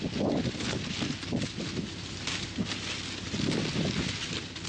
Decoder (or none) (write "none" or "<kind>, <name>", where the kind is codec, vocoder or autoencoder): none